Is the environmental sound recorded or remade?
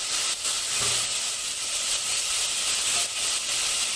recorded